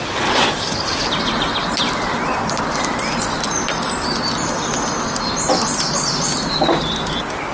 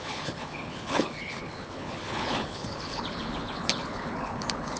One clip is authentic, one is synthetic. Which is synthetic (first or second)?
second